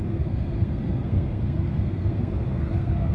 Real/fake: fake